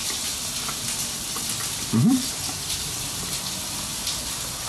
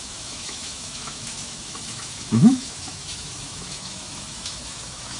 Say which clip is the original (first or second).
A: first